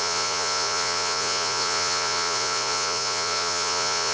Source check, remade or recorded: remade